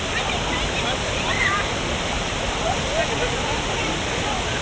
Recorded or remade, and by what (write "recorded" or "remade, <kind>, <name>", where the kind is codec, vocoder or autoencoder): recorded